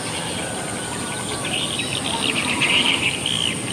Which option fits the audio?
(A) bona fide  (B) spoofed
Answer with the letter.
A